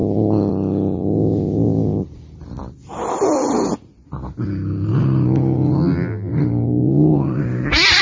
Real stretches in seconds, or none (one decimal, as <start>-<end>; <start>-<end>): 0.0-5.8; 6.3-8.0